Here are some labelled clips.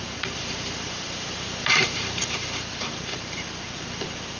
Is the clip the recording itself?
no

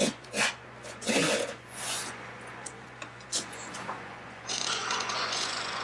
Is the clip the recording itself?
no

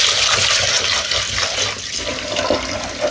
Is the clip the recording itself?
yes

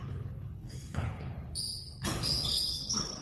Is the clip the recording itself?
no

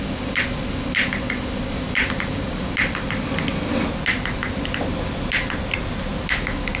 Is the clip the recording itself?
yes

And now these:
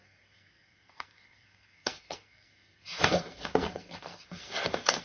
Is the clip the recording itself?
no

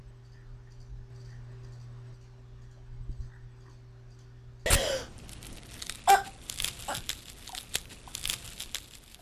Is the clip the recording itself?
yes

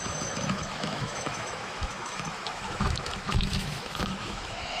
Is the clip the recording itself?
no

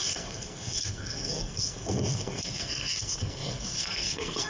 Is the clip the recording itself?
no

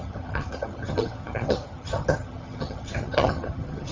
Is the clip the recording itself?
no